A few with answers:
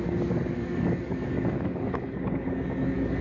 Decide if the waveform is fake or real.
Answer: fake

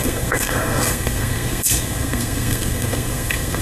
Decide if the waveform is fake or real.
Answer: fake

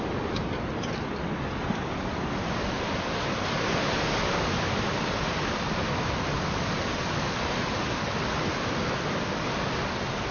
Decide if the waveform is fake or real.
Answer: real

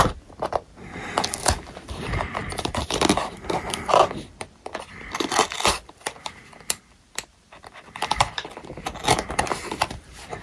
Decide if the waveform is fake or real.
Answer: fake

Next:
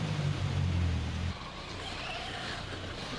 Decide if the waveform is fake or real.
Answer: real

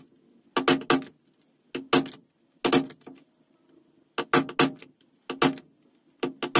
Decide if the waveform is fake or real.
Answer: real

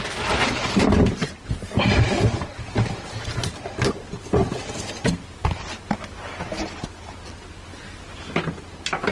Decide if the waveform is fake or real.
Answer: real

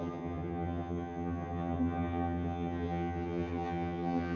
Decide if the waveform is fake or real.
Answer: fake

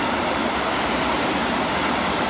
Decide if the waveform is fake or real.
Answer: real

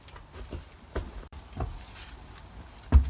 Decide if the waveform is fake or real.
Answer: real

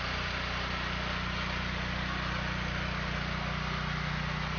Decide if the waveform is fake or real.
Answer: real